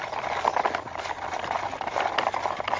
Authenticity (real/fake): real